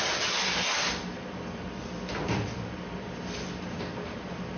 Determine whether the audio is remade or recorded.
recorded